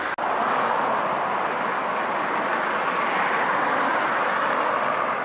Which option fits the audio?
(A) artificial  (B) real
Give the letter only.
B